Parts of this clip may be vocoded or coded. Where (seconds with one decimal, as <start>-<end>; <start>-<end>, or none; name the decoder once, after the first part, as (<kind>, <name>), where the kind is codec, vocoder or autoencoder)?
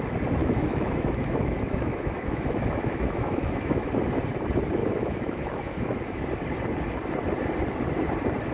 0.4-3.9 (autoencoder, DAC-VAE); 4.8-6.3